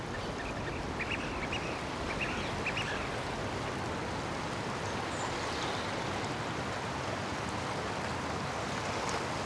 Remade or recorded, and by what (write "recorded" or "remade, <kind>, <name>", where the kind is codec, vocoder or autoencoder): recorded